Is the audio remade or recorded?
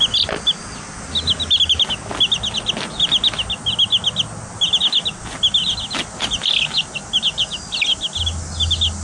recorded